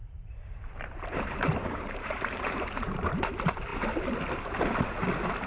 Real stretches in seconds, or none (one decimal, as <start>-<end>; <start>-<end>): 3.3-5.5